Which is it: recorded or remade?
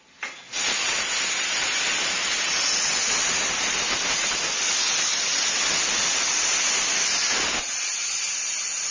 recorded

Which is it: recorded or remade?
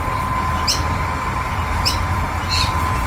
recorded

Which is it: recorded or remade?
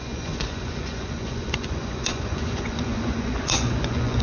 remade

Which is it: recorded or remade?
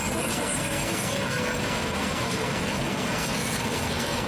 remade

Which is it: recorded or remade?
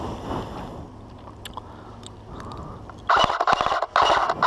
recorded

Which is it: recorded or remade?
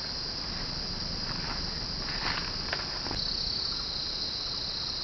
recorded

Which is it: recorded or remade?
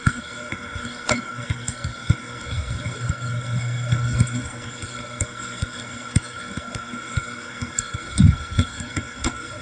remade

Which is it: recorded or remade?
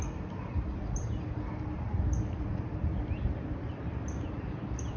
remade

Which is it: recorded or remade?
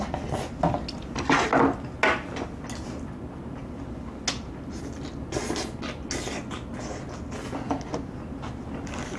recorded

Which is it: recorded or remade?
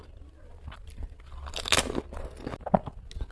recorded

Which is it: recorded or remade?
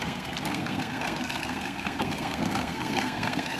remade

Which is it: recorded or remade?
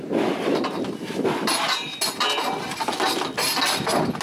recorded